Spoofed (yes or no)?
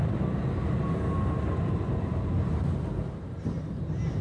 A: no